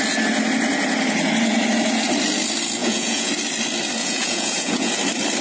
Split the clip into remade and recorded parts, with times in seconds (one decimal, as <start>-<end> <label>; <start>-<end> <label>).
0.0-2.8 recorded; 2.8-3.3 remade; 3.3-4.0 recorded; 4.0-4.9 remade; 4.9-5.4 recorded